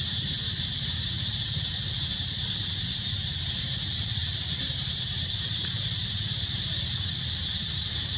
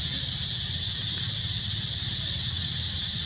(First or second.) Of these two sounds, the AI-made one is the first